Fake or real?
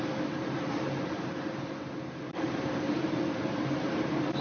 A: fake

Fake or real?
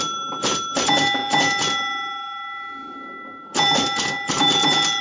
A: real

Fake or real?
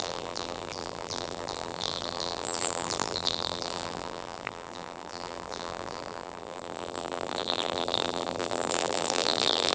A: fake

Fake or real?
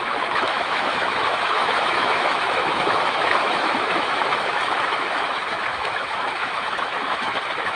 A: fake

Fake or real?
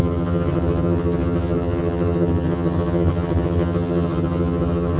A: fake